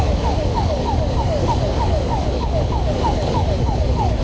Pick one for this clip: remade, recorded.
remade